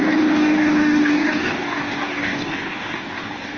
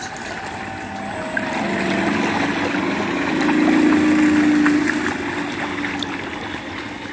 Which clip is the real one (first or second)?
second